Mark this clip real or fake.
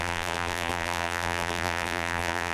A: fake